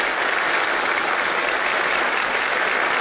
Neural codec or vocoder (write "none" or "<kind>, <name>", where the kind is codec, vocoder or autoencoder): none